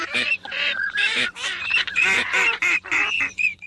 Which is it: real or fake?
fake